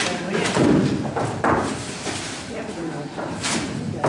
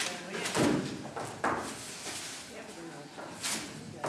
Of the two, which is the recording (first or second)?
second